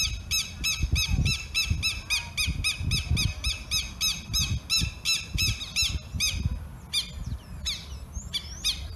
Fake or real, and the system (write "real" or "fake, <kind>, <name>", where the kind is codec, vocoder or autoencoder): real